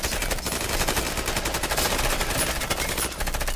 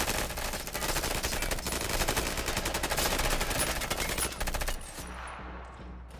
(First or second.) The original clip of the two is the second